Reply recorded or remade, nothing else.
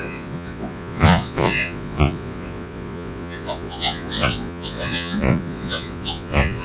remade